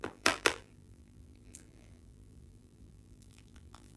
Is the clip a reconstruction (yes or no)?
yes